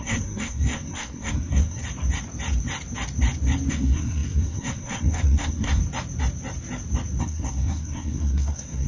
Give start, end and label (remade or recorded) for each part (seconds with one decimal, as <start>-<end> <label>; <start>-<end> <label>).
0.0-1.8 remade; 1.8-3.7 recorded; 3.7-5.8 remade; 5.8-7.2 recorded; 7.2-8.9 remade